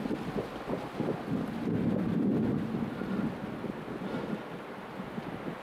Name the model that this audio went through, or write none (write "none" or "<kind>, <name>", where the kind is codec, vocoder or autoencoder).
none